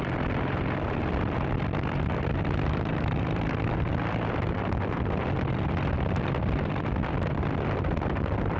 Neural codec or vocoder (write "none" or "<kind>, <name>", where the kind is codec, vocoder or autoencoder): vocoder, BigVGAN v2